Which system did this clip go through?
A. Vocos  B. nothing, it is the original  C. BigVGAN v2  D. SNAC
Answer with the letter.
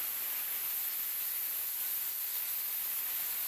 B